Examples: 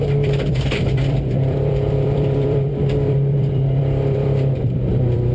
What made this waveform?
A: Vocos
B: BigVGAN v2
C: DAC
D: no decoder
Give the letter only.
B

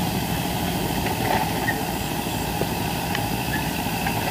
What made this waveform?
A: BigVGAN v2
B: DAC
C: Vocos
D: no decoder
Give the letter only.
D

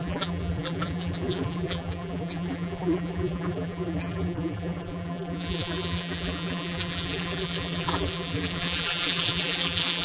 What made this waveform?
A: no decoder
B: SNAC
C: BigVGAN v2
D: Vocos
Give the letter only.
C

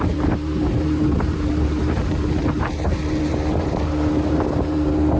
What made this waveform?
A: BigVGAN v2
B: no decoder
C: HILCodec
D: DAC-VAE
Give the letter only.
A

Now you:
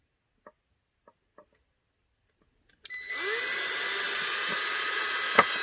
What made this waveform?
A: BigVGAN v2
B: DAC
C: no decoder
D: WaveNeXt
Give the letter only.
C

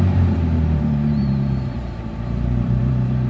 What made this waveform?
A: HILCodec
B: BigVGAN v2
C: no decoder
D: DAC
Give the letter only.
B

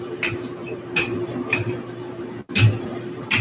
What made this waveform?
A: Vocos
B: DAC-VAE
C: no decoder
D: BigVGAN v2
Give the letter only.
D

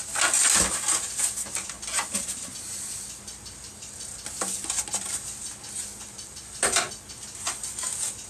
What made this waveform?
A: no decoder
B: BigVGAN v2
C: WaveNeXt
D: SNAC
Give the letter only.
A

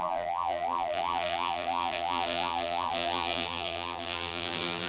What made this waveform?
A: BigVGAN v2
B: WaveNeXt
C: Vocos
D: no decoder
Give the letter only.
A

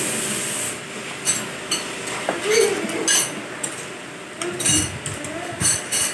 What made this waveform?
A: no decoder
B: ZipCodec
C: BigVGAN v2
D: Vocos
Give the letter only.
A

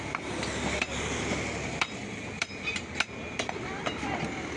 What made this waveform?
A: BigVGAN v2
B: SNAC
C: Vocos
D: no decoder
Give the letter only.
A